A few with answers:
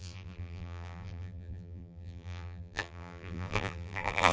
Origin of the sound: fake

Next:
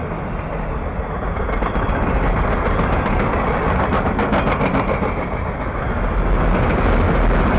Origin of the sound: real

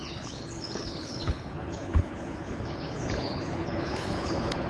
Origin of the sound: fake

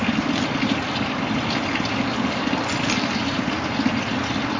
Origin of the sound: real